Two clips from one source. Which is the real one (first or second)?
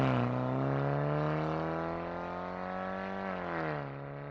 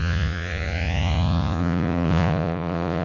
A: first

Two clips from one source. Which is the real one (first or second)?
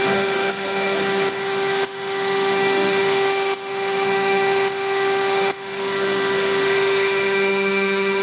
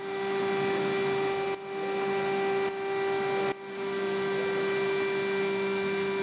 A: second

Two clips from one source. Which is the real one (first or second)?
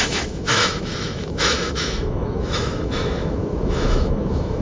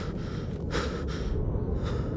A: second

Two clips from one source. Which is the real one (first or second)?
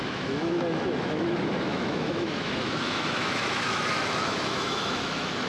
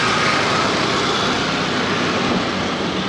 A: second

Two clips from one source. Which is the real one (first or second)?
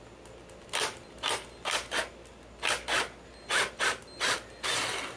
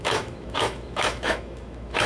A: first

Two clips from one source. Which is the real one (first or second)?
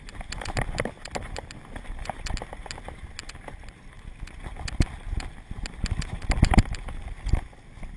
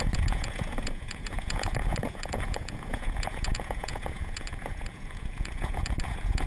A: first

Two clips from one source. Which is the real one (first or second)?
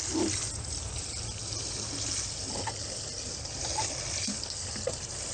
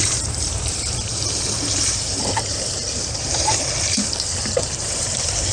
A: first